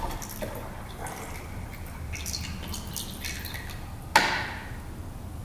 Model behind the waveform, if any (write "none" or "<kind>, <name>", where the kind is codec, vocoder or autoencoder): none